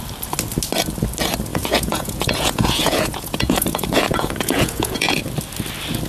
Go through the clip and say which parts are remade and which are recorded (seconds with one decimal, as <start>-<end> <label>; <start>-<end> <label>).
0.0-1.5 recorded; 1.5-5.2 remade; 5.2-6.1 recorded